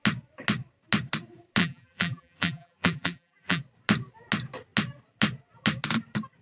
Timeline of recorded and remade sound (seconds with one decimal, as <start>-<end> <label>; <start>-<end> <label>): 0.0-1.6 recorded; 1.6-3.6 remade; 3.6-6.4 recorded